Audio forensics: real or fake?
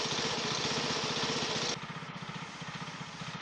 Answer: real